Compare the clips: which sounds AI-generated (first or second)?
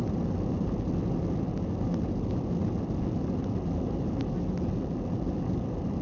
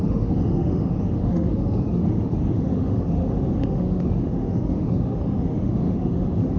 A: second